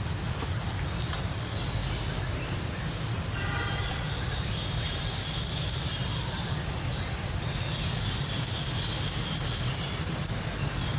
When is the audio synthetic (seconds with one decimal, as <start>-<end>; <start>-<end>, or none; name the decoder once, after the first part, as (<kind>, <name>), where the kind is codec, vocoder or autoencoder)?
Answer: 3.9-4.5 (vocoder, BigVGAN v2)